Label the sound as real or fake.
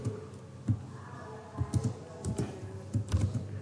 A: real